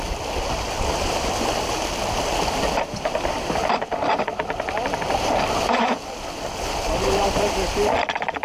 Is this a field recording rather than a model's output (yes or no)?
yes